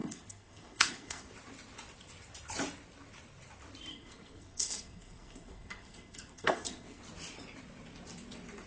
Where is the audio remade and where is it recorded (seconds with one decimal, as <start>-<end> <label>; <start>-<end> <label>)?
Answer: 0.0-1.3 remade; 1.3-3.9 recorded; 3.9-7.0 remade; 7.0-8.7 recorded